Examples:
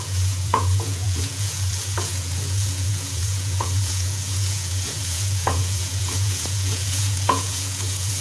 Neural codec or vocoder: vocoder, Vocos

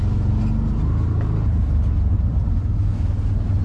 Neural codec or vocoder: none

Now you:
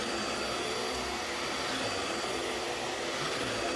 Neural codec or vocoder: none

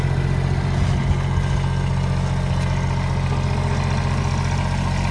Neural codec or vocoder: none